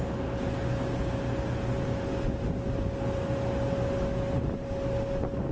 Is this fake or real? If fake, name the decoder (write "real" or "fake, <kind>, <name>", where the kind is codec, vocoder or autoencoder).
real